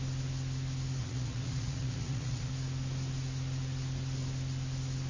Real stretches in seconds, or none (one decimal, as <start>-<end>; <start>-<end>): 0.0-1.0; 2.5-5.1